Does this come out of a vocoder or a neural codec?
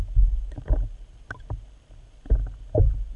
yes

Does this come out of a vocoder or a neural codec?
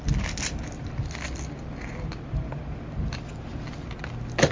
no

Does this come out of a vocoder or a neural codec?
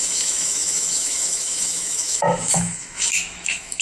yes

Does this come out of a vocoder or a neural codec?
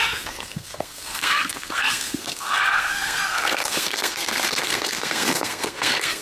yes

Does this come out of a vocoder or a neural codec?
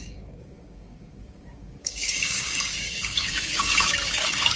yes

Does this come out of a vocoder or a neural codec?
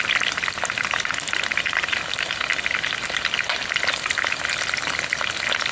no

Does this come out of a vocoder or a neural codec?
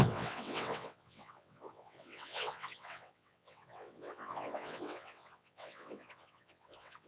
yes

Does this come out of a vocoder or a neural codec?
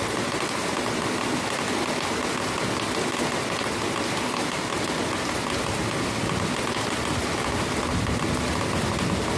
no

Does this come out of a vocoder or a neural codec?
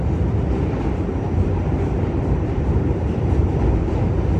no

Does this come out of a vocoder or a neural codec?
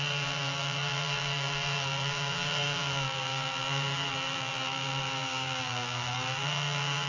yes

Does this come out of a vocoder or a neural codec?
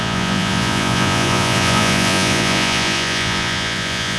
yes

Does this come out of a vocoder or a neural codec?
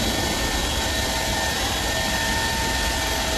no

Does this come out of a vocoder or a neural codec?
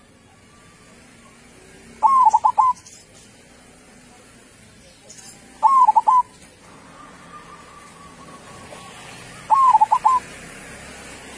no